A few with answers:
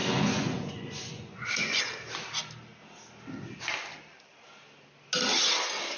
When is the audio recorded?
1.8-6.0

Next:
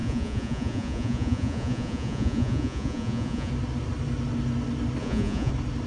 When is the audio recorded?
3.5-5.0; 5.5-5.9